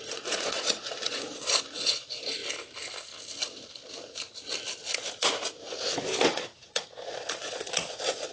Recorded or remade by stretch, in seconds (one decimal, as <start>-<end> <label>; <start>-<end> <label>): 0.0-2.4 remade; 2.4-6.3 recorded; 6.3-8.3 remade